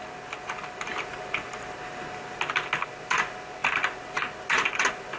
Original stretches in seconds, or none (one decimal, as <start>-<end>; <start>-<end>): 0.0-5.2